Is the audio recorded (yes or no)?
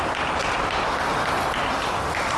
yes